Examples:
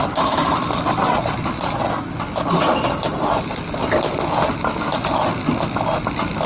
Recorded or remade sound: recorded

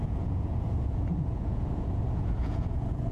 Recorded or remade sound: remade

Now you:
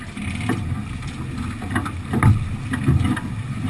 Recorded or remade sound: recorded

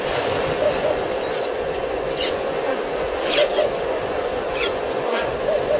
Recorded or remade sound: remade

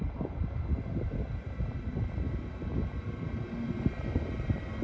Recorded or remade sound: recorded